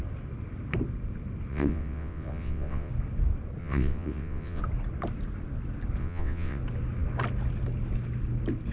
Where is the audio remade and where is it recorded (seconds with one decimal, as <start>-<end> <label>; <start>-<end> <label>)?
0.0-1.5 recorded; 1.5-2.9 remade; 2.9-3.6 recorded; 3.6-4.6 remade; 4.6-6.0 recorded; 6.0-6.6 remade; 6.6-8.7 recorded